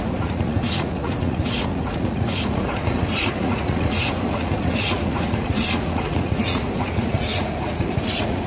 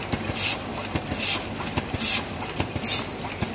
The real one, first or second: second